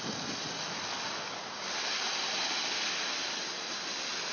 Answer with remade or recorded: recorded